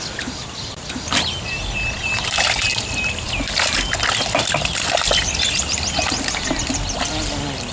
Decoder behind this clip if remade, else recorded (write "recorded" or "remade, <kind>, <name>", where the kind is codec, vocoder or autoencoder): recorded